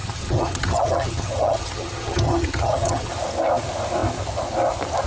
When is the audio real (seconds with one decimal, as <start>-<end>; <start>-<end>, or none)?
3.1-5.1